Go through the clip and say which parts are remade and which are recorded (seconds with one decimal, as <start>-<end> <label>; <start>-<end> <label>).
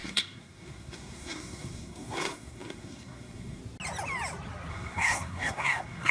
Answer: 0.0-3.6 remade; 3.6-4.7 recorded; 4.7-6.1 remade